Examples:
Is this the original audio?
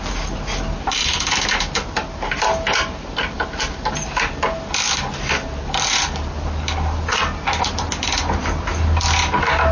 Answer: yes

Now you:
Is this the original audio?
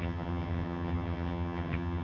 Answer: no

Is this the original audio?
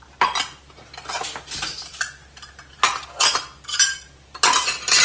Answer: yes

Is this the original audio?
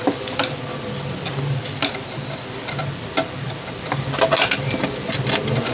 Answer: yes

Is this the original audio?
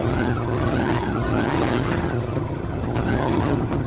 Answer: no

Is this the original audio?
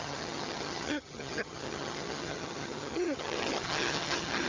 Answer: no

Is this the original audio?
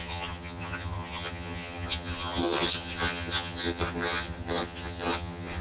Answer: no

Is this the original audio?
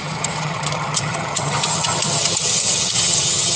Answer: no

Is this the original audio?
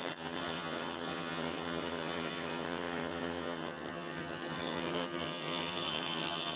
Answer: no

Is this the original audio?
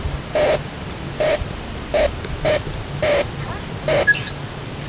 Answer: yes